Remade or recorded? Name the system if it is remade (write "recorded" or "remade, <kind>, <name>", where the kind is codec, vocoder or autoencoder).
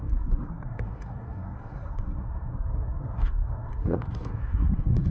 remade, codec, SNAC